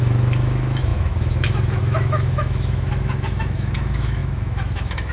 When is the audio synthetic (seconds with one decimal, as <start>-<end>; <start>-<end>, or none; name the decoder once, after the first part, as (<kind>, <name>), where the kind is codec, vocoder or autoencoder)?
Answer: 0.0-5.1 (autoencoder, DAC-VAE)